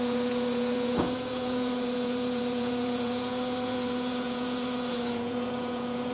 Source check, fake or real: fake